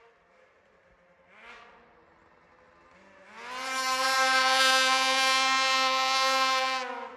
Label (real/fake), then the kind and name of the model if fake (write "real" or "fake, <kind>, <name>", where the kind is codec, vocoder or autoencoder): real